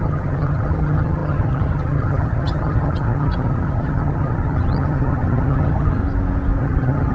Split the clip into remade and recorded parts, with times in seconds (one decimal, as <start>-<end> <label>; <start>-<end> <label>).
0.0-6.0 remade; 6.0-6.6 recorded; 6.6-7.1 remade